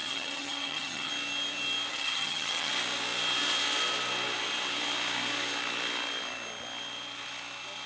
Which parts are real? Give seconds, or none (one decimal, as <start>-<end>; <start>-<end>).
1.1-1.9; 2.7-7.9